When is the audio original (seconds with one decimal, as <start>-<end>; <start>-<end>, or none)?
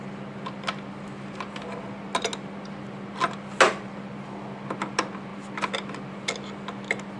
0.0-7.2